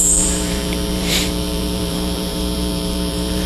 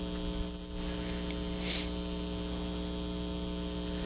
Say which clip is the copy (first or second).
first